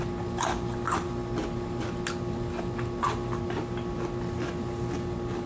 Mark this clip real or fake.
real